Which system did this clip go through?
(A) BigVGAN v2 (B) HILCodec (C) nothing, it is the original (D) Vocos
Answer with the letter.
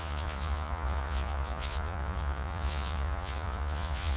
D